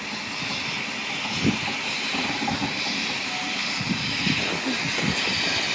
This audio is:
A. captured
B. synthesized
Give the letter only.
A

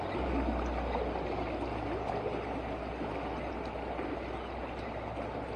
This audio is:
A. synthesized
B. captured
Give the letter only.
B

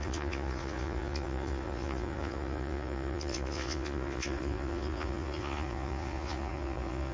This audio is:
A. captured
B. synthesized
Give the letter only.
B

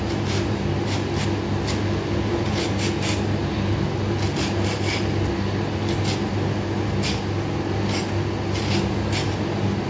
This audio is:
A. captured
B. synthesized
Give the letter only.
A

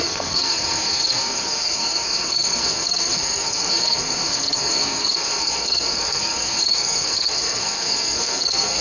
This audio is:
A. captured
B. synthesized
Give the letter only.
B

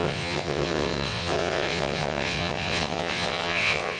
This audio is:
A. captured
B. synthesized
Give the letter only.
B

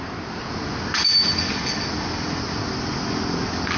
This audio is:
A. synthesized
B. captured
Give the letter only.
B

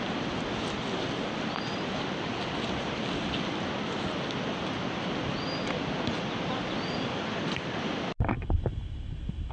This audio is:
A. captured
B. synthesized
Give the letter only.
A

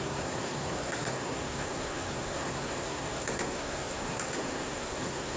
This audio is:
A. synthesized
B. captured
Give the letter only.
A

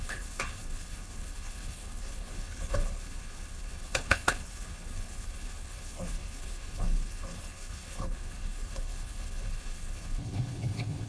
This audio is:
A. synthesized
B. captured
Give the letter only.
A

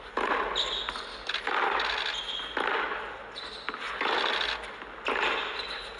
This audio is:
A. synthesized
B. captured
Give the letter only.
B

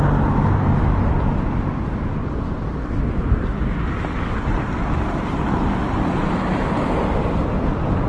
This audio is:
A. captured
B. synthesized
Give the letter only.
A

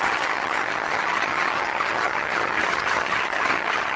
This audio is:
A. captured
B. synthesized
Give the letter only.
B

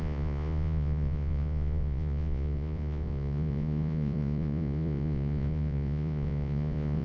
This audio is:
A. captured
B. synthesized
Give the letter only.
B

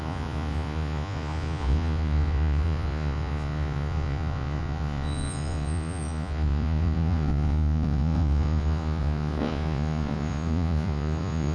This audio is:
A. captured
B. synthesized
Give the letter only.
B